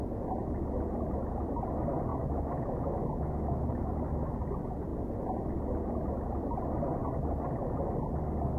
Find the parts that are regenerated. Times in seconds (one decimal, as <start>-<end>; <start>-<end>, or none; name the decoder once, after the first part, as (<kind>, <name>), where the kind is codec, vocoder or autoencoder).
2.1-3.9 (autoencoder, DAC-VAE)